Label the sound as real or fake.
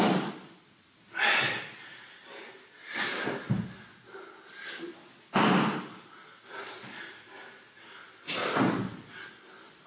real